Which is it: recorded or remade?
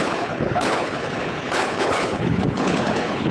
remade